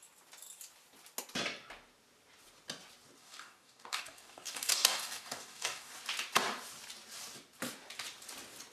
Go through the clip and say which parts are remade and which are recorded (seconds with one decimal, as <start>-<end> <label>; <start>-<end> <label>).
0.0-3.2 recorded; 3.2-5.9 remade; 5.9-8.7 recorded